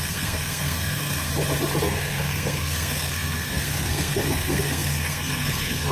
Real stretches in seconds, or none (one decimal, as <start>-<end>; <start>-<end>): 1.3-1.8